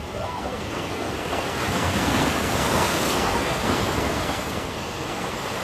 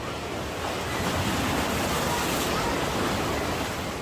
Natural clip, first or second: second